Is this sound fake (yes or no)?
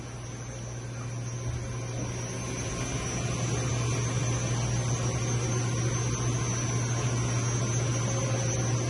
no